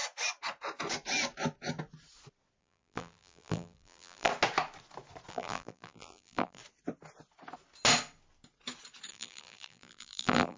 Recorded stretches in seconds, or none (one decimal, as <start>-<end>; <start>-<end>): 0.0-2.6; 4.3-5.3; 6.6-9.1